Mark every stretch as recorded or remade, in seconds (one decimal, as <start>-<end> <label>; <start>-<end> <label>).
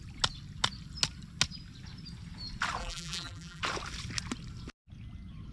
0.0-2.8 recorded; 2.8-3.6 remade; 3.6-5.5 recorded